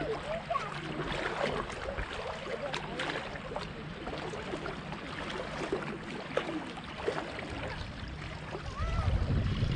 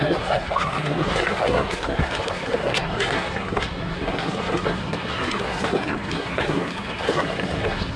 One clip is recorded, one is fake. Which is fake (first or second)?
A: second